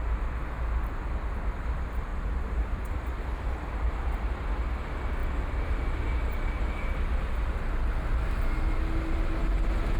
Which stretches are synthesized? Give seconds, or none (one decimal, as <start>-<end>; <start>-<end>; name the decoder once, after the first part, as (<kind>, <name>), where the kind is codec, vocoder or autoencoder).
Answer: 2.1-4.6 (vocoder, BigVGAN v2); 5.2-7.3